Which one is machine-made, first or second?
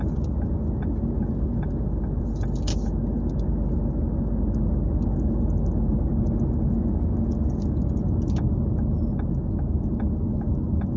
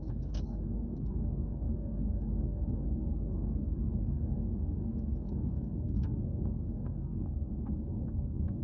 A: second